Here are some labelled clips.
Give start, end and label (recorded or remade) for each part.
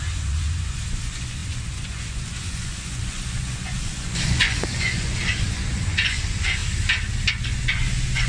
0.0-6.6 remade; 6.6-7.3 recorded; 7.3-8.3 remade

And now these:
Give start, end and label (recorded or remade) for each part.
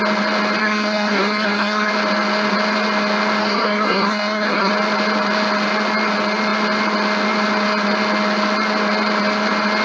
0.0-0.6 recorded; 0.6-1.9 remade; 1.9-3.4 recorded; 3.4-4.7 remade; 4.7-9.8 recorded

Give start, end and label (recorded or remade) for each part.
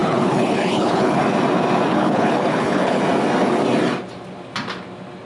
0.0-1.2 remade; 1.2-1.9 recorded; 1.9-3.0 remade; 3.0-5.3 recorded